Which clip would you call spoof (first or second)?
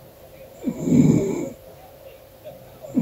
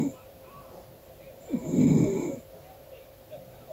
second